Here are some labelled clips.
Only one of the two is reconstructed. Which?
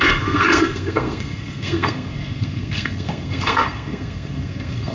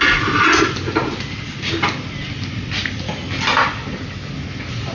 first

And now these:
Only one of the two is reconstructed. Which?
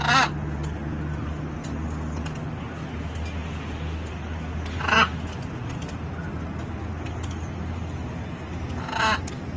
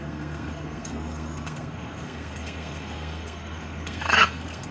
second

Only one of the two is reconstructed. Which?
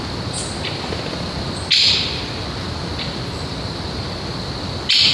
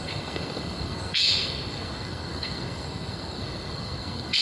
second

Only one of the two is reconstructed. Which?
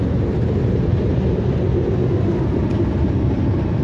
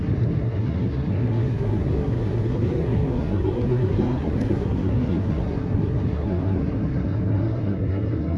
second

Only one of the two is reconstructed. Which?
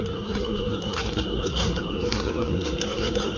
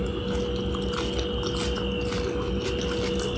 first